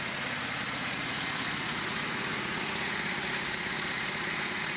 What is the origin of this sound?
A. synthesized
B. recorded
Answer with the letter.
A